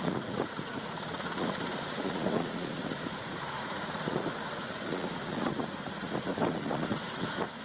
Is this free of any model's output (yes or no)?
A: no